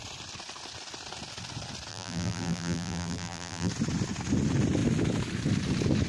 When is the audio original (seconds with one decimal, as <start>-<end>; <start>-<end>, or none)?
0.0-1.9; 3.7-6.1